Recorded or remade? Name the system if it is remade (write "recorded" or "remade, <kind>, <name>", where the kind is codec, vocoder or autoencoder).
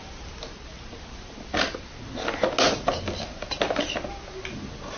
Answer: recorded